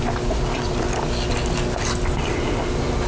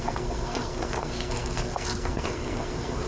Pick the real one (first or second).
first